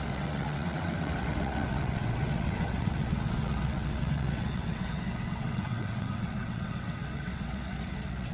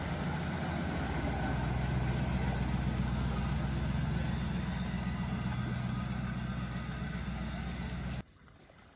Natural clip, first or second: second